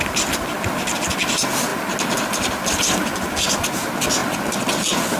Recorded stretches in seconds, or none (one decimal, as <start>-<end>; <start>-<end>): 0.0-5.2